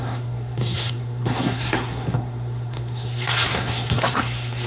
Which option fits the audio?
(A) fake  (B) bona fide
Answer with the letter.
A